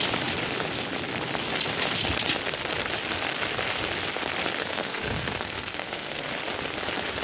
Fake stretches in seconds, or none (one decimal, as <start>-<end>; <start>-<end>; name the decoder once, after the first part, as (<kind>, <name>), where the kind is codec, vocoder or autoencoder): 4.6-6.3 (codec, SNAC)